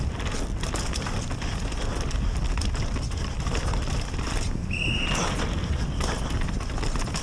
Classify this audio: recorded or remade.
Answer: remade